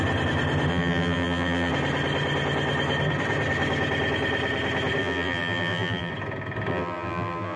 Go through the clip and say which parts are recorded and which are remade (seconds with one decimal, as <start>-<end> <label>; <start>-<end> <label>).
0.0-0.7 recorded; 0.7-1.7 remade; 1.7-5.0 recorded; 5.0-6.1 remade; 6.1-6.7 recorded; 6.7-7.6 remade